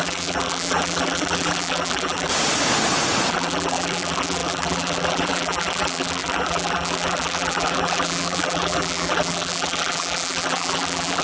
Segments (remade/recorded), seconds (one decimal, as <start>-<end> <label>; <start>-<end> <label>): 0.0-2.3 remade; 2.3-3.3 recorded; 3.3-11.2 remade